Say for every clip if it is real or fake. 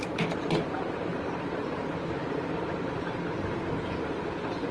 fake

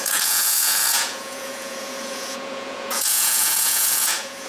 fake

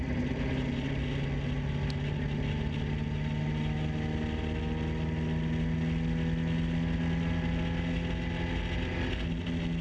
real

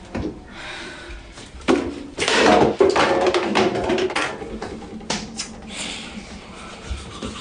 fake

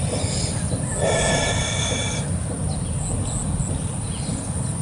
real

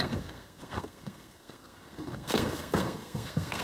fake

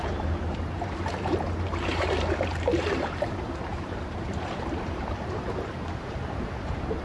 fake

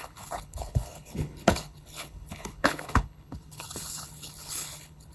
fake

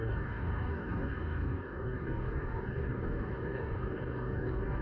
fake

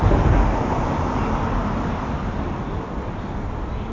real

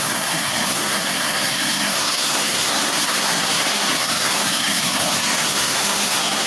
fake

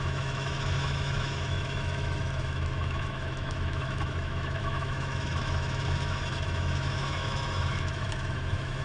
fake